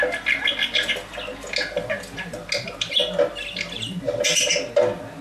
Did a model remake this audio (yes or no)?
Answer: no